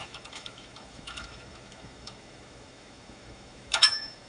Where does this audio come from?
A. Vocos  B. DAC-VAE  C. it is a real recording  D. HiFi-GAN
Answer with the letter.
B